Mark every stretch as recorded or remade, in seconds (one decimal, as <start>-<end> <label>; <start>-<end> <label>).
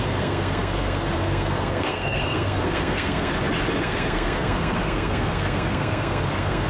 0.0-3.3 remade; 3.3-3.8 recorded; 3.8-6.7 remade